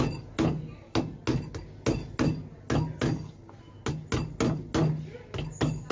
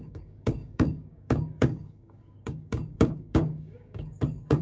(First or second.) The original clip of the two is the first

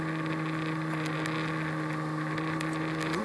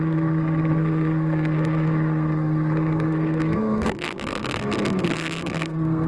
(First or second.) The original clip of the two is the first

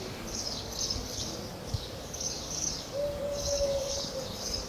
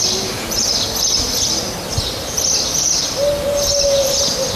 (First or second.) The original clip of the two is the second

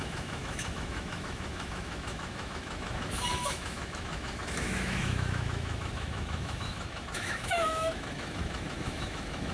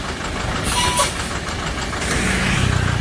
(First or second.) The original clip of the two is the second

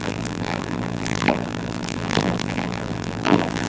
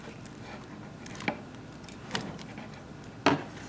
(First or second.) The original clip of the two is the second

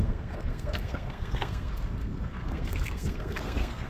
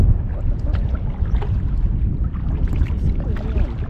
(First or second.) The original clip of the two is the second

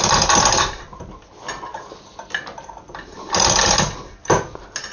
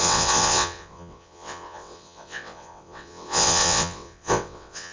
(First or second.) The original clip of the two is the first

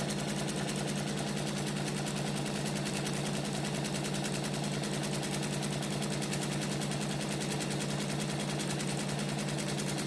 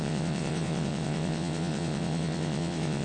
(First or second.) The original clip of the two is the first